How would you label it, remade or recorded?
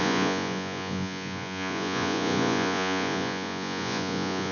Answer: remade